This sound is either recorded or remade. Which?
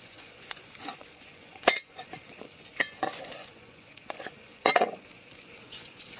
remade